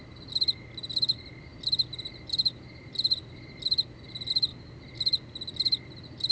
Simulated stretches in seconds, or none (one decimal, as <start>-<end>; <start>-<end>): none